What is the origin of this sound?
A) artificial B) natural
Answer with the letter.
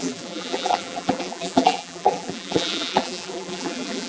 A